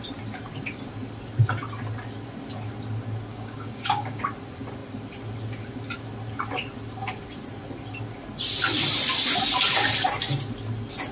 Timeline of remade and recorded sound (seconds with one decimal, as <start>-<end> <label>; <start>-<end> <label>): 0.0-3.3 recorded; 3.3-4.2 remade; 4.2-11.1 recorded